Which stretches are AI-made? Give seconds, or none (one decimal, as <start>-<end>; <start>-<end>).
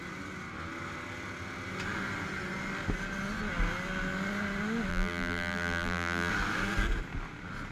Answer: 4.9-6.3